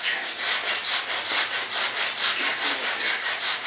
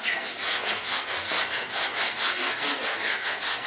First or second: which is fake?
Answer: second